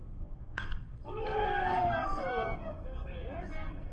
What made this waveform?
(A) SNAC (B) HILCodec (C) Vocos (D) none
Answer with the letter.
A